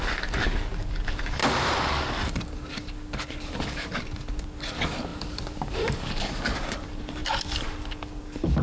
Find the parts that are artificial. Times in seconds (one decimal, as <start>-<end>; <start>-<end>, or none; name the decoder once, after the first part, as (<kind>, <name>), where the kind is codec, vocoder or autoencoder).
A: 0.0-1.4 (codec, DAC); 1.9-8.6

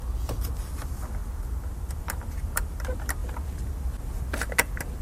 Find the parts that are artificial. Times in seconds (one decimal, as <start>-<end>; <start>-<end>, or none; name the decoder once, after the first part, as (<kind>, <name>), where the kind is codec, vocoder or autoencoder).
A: none

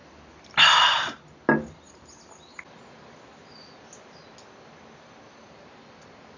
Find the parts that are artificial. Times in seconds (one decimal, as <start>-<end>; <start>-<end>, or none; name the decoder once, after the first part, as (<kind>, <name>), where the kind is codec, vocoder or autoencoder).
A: none

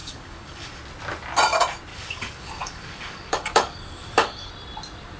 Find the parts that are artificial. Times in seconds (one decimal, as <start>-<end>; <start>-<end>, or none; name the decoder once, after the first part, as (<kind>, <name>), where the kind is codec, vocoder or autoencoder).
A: 0.0-0.8 (codec, DAC); 1.9-4.5

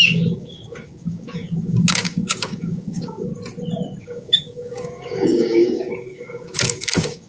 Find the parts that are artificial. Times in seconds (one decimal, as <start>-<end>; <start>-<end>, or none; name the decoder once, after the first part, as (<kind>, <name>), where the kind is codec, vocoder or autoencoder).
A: 0.0-3.3 (codec, DAC); 4.0-7.3

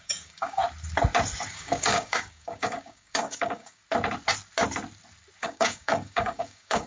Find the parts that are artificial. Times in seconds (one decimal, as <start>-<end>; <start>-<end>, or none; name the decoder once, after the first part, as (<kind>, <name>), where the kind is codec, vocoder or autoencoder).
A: 0.0-0.6 (codec, DAC); 1.5-3.8; 5.4-6.9

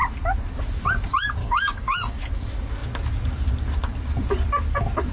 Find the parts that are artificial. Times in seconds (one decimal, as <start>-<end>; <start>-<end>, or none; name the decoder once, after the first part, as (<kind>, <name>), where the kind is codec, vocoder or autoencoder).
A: 1.4-2.2 (codec, DAC)